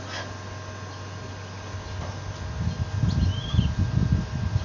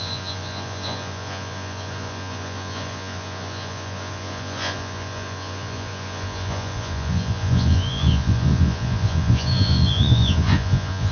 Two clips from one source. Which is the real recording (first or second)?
first